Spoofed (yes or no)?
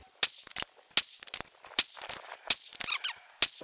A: no